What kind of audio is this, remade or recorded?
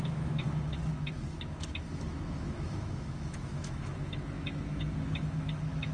remade